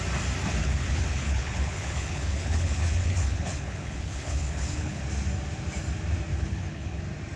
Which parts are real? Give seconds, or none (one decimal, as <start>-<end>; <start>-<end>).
0.0-0.6; 5.0-6.3; 7.0-7.4